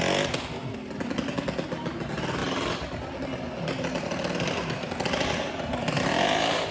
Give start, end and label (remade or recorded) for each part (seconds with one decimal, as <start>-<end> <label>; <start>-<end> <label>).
0.0-6.7 recorded